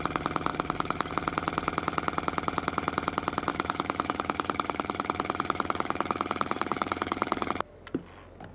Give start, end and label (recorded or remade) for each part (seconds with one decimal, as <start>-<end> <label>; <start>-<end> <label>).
0.0-0.5 recorded; 0.5-1.1 remade; 1.1-3.5 recorded; 3.5-7.5 remade; 7.5-8.5 recorded